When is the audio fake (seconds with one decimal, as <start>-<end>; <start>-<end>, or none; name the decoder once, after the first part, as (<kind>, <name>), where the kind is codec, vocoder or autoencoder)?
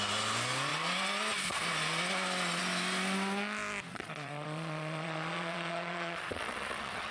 3.9-7.1 (vocoder, Vocos)